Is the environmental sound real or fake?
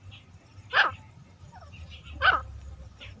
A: fake